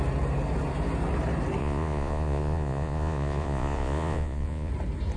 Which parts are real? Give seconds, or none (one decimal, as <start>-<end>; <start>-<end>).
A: 0.0-1.6; 4.7-5.2

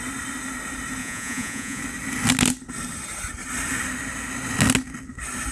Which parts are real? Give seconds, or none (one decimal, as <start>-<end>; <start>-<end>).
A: 0.0-1.0; 1.8-5.5

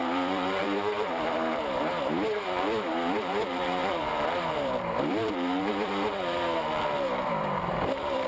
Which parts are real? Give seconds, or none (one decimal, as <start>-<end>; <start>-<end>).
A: none

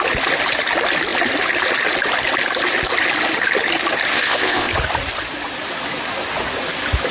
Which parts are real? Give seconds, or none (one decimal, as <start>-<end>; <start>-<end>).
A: 0.0-4.1; 4.7-7.1

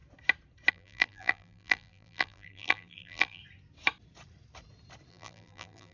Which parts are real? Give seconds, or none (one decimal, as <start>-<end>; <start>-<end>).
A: 0.0-0.7; 3.4-5.1